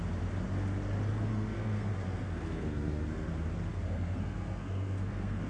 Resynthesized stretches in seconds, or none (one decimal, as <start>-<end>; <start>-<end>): 1.3-3.3; 3.7-5.5